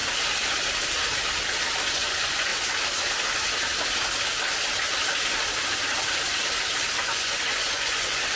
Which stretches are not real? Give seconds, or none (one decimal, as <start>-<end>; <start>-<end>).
1.9-2.5; 7.0-8.4